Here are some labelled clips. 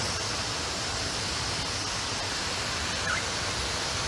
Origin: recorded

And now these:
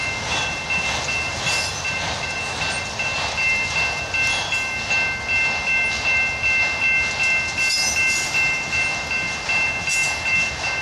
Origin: recorded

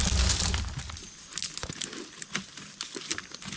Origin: recorded